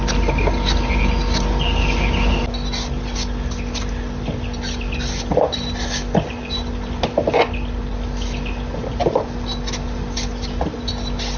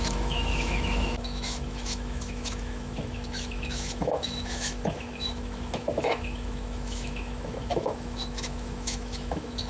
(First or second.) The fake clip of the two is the second